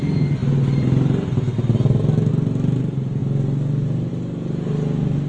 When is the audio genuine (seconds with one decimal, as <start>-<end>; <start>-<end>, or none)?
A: 0.0-5.3